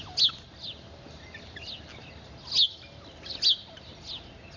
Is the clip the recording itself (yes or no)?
yes